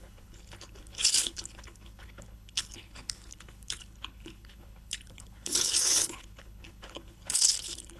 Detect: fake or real fake